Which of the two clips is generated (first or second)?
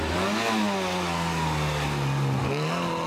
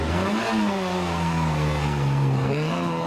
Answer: second